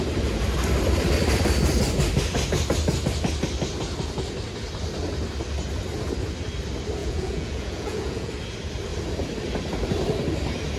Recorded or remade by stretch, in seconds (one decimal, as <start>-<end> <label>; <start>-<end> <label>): 0.0-7.0 recorded; 7.0-8.3 remade; 8.3-10.8 recorded